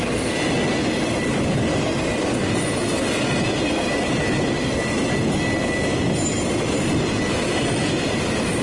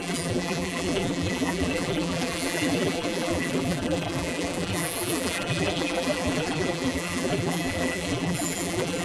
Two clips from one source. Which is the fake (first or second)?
second